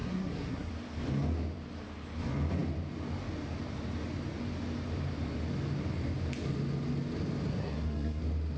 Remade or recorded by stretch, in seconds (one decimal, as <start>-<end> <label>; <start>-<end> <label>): 0.0-0.7 remade; 0.7-7.5 recorded; 7.5-8.2 remade; 8.2-8.6 recorded